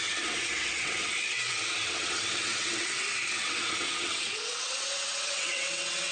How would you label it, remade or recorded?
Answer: remade